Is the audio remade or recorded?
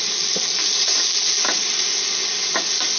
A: recorded